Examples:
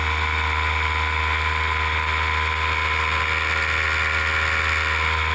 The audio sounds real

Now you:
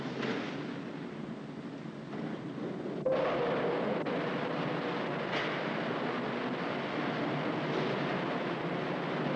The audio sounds real